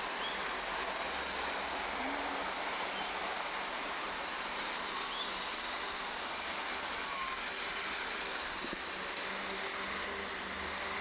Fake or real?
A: real